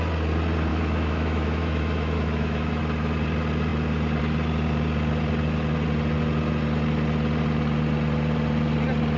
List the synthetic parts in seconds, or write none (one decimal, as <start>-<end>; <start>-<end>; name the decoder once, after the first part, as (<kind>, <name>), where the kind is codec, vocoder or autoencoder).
0.7-2.8 (autoencoder, DAC-VAE)